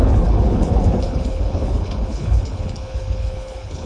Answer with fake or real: fake